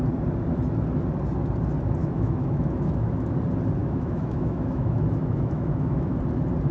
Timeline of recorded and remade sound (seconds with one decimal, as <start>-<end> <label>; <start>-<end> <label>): 0.0-2.0 recorded; 2.0-3.3 remade; 3.3-3.8 recorded; 3.8-6.2 remade; 6.2-6.7 recorded

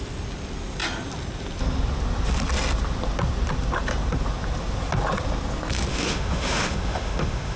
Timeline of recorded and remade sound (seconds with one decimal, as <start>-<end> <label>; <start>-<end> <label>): 0.0-5.9 recorded; 5.9-7.6 remade

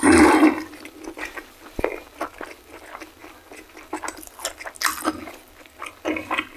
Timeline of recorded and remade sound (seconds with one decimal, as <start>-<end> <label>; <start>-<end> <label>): 0.0-6.6 recorded

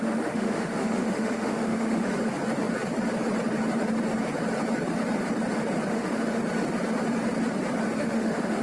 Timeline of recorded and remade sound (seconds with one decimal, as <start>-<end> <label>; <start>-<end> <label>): 0.0-2.1 remade; 2.1-5.9 recorded; 5.9-6.4 remade; 6.4-8.0 recorded; 8.0-8.6 remade

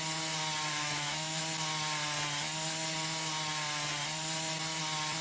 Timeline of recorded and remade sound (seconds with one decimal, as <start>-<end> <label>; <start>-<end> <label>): 0.0-0.7 recorded; 0.7-1.4 remade; 1.4-5.2 recorded

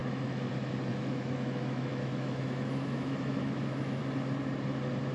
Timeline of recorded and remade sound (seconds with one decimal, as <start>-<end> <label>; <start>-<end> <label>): 0.0-0.5 remade; 0.5-0.9 recorded; 0.9-4.0 remade; 4.0-5.1 recorded